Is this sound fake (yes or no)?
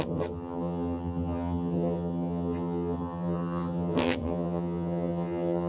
yes